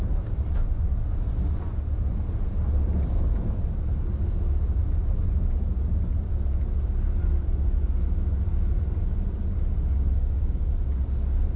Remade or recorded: recorded